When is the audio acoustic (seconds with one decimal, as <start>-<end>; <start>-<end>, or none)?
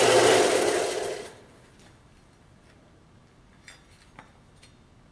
0.0-5.1